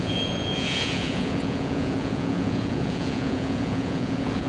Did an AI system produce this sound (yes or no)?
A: yes